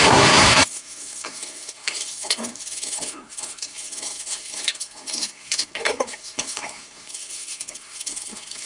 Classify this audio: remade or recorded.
remade